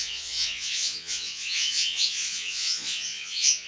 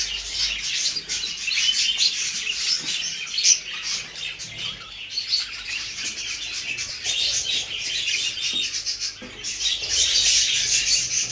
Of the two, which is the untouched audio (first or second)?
second